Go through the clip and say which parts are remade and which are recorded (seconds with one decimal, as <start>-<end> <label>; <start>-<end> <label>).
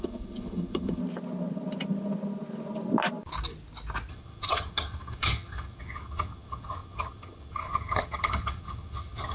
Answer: 0.0-1.0 remade; 1.0-4.1 recorded; 4.1-9.3 remade